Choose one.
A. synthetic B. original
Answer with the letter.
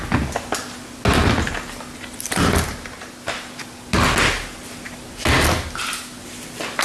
B